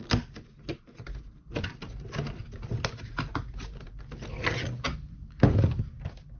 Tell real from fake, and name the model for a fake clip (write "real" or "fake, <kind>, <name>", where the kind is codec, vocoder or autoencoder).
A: real